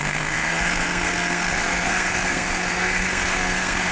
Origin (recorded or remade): remade